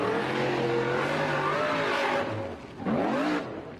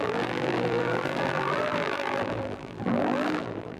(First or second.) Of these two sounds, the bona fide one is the first